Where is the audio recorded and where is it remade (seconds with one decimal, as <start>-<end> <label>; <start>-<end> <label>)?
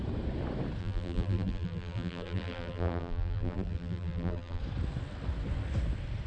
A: 0.0-0.8 recorded; 0.8-4.6 remade; 4.6-6.3 recorded